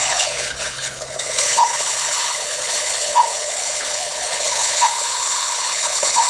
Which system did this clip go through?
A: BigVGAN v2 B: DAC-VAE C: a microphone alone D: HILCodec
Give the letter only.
D